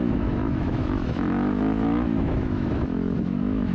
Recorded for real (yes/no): no